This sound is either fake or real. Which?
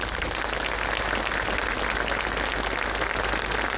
real